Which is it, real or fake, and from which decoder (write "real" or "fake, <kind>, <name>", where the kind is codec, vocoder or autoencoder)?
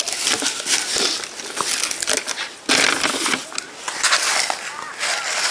real